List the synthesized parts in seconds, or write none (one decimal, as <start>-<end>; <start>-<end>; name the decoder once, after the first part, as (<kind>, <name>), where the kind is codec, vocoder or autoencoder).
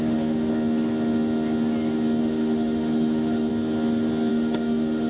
0.0-0.5 (autoencoder, DAC-VAE); 2.2-3.5; 4.3-5.1